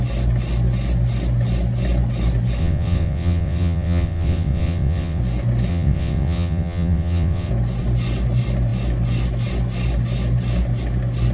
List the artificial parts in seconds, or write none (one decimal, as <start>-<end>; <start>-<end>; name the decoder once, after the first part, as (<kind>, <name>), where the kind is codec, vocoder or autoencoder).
2.6-5.2 (vocoder, WaveNeXt); 5.7-7.5